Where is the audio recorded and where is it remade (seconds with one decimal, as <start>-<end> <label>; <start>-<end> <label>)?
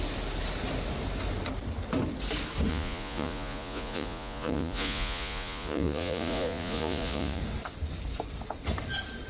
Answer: 0.0-2.7 recorded; 2.7-7.4 remade; 7.4-9.3 recorded